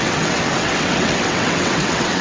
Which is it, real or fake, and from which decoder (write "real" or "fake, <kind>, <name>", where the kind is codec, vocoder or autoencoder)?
fake, vocoder, WaveNeXt